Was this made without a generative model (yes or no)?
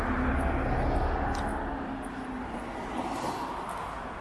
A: yes